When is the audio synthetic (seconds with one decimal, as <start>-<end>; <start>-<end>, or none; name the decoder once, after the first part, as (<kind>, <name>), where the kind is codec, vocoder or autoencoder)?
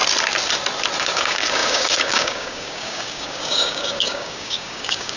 1.0-5.2 (codec, DAC)